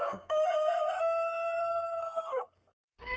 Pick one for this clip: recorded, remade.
remade